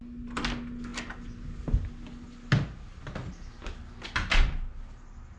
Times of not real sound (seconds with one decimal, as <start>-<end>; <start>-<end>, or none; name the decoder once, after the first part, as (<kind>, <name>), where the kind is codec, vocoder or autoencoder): none